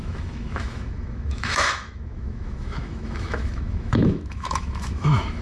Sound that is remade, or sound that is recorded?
remade